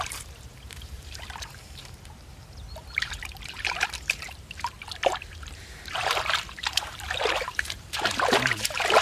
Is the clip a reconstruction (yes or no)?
yes